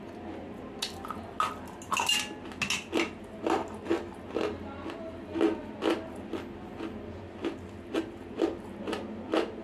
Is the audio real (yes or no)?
yes